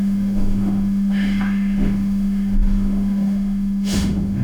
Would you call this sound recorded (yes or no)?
no